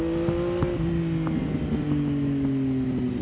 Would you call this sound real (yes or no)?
yes